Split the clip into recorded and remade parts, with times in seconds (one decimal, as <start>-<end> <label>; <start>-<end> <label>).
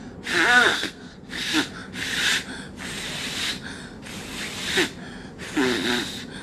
0.0-0.7 recorded; 0.7-1.3 remade; 1.3-6.4 recorded